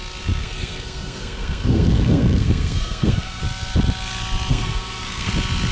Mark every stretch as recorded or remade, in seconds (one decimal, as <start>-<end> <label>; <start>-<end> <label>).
0.0-0.4 recorded; 0.4-3.4 remade; 3.4-4.5 recorded; 4.5-5.3 remade; 5.3-5.7 recorded